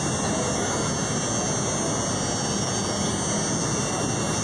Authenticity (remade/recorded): recorded